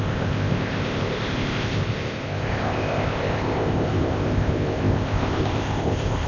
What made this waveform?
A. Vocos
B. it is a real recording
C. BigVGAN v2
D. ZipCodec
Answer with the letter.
D